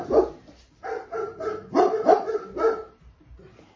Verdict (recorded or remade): remade